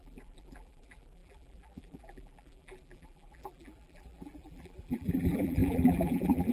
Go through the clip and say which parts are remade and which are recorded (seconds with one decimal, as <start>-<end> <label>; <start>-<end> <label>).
0.0-6.5 remade